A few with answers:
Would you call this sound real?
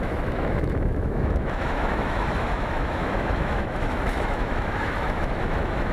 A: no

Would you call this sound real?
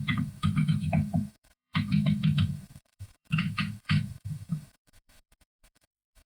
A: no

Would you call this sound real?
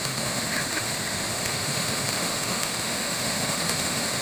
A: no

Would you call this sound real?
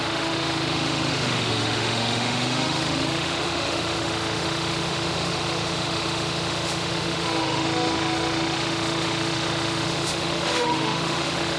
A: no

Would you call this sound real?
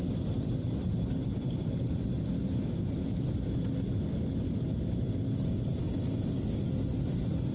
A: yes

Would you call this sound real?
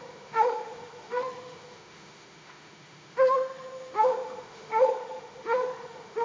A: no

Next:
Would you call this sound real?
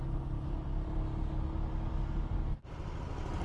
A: yes